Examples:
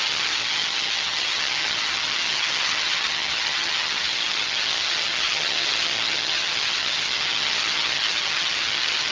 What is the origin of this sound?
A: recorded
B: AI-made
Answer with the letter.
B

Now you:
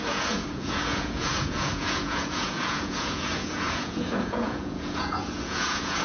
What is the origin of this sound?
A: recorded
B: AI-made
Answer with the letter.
B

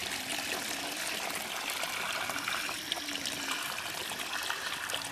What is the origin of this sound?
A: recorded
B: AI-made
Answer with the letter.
A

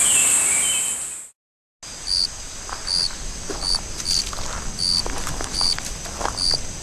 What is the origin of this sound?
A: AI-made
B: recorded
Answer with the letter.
B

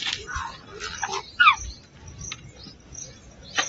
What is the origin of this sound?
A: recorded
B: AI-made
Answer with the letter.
A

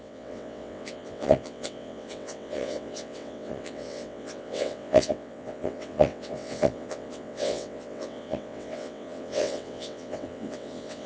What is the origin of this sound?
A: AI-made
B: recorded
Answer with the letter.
A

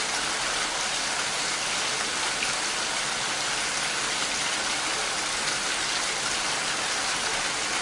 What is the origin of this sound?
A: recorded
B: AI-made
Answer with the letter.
A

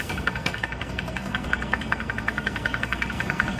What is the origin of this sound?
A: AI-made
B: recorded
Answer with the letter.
A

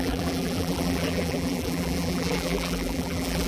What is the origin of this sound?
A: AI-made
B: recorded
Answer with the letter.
A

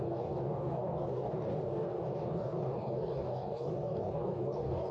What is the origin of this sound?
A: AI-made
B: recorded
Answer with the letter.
A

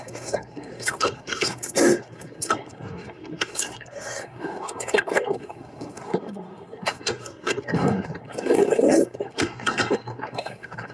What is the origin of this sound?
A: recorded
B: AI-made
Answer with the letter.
B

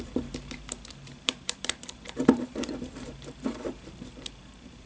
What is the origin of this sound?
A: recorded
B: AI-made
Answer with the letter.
B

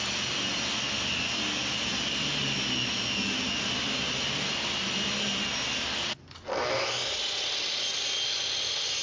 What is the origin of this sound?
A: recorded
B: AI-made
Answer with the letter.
A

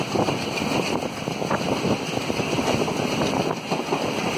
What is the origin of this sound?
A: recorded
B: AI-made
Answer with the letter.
A